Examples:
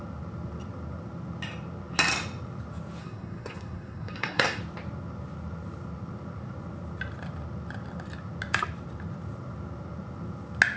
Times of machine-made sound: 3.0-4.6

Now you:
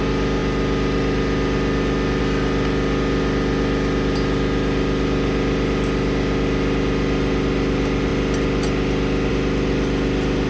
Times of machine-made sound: none